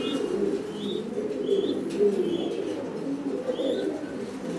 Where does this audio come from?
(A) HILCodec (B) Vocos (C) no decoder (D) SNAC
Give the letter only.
C